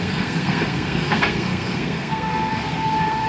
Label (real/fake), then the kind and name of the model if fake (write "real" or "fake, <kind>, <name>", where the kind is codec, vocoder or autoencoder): fake, codec, SNAC